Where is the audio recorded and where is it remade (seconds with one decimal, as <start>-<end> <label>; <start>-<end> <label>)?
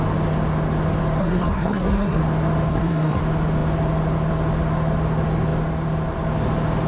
0.0-1.2 recorded; 1.2-2.2 remade; 2.2-2.7 recorded; 2.7-3.2 remade; 3.2-6.9 recorded